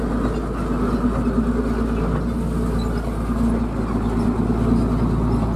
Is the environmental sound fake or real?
real